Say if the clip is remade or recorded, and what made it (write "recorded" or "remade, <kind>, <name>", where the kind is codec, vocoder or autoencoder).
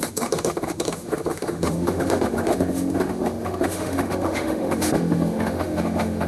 remade, autoencoder, DAC-VAE